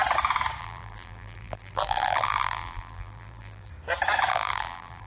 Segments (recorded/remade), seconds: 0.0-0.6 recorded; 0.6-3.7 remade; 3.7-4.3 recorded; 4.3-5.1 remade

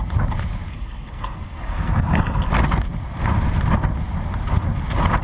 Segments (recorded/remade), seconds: 0.0-0.7 recorded; 0.7-2.5 remade; 2.5-5.2 recorded

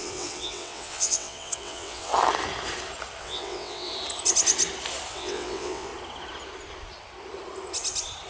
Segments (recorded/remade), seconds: 0.0-2.1 remade; 2.1-3.2 recorded; 3.2-3.9 remade; 3.9-5.1 recorded; 5.1-5.9 remade; 5.9-8.3 recorded

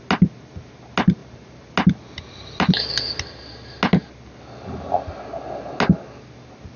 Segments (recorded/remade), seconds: 0.0-6.8 recorded

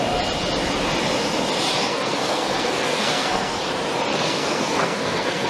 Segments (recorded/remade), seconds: 0.0-1.8 recorded; 1.8-3.6 remade; 3.6-4.1 recorded; 4.1-5.5 remade

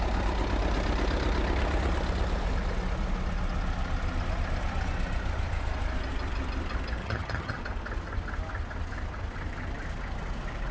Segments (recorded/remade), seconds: 0.0-7.0 recorded; 7.0-7.6 remade; 7.6-10.7 recorded